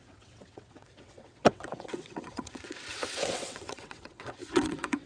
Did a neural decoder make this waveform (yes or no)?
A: yes